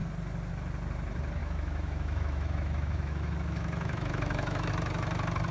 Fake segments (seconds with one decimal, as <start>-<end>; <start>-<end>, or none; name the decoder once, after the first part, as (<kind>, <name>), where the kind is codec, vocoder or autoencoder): 1.4-4.7 (autoencoder, DAC-VAE)